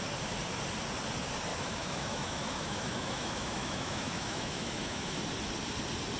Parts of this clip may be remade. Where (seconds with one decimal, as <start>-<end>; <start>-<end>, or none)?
1.5-5.2